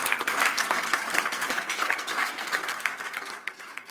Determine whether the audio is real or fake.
fake